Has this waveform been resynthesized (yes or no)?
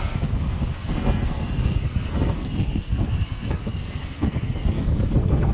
yes